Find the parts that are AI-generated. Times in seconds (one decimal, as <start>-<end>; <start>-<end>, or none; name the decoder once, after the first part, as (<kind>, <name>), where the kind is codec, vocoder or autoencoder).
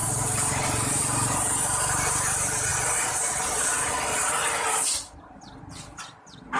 0.0-1.6 (vocoder, BigVGAN v2); 2.7-3.6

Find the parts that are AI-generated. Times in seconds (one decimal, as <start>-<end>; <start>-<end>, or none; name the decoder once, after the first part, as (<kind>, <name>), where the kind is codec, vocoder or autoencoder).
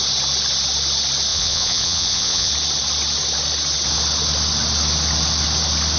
1.3-2.5 (vocoder, Vocos)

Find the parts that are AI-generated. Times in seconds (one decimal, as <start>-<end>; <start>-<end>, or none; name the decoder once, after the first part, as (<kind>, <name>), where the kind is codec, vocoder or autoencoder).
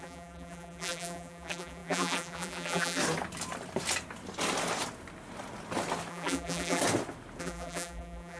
0.0-3.0 (vocoder, BigVGAN v2); 6.1-6.8; 7.4-8.4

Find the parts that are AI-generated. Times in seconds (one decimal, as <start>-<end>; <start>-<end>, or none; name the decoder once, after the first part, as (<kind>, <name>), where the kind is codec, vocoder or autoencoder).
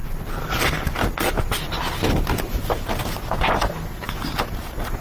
none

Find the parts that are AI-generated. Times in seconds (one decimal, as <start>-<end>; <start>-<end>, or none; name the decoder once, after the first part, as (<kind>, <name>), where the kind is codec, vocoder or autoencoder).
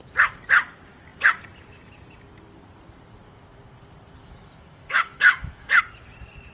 4.2-5.8 (autoencoder, DAC-VAE)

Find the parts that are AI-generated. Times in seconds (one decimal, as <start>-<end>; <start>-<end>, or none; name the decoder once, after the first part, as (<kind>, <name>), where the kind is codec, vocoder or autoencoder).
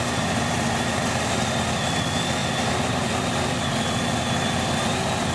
none